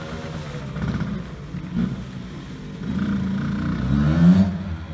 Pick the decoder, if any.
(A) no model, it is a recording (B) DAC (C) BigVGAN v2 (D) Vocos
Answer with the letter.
A